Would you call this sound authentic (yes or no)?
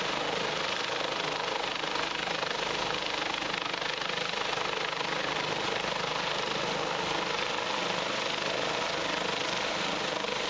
yes